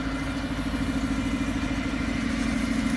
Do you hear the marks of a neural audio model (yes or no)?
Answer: no